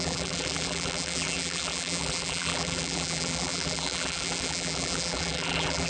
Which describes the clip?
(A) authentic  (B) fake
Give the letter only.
B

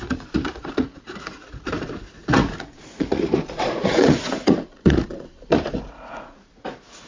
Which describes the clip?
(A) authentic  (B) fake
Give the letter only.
B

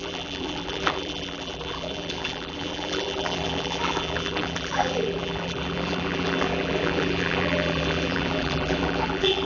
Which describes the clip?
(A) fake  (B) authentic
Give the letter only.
A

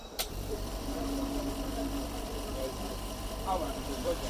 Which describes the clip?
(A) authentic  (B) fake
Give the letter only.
B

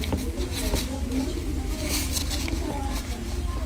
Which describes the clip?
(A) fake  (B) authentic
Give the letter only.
B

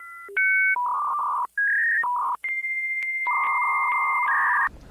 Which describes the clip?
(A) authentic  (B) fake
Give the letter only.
A